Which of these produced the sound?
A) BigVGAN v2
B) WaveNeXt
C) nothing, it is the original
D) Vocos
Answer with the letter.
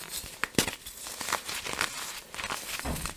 C